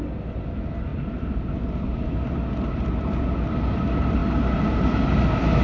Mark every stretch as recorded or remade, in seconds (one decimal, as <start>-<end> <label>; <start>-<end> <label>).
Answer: 0.0-0.9 remade; 0.9-2.7 recorded; 2.7-4.2 remade; 4.2-5.6 recorded